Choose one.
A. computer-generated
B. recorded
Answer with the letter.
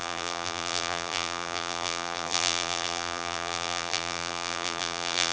A